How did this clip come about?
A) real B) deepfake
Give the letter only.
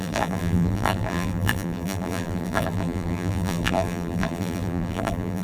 B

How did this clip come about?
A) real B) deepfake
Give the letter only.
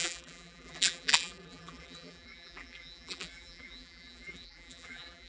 B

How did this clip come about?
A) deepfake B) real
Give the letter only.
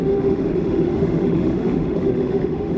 A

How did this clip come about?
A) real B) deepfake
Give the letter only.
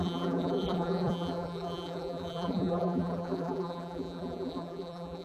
B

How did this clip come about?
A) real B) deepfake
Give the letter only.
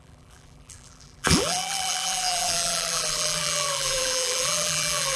B